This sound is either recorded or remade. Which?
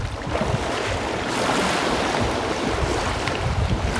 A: recorded